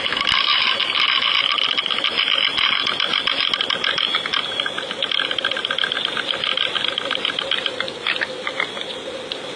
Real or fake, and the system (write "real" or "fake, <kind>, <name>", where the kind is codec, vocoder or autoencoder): real